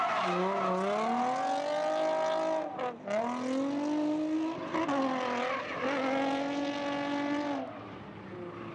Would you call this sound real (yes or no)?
yes